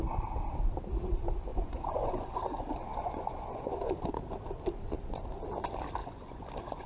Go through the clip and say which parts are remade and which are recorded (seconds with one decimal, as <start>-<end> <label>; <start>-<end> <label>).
0.0-1.5 recorded; 1.5-4.1 remade; 4.1-6.0 recorded; 6.0-6.9 remade